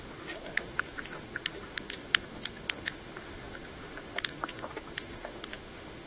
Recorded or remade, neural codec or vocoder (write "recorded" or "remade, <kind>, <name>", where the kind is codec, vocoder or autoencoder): remade, autoencoder, DAC-VAE